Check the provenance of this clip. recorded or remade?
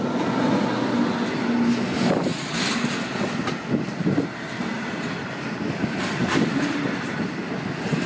recorded